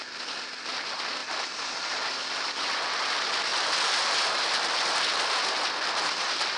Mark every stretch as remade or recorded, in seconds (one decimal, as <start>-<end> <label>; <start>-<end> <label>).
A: 0.0-6.6 recorded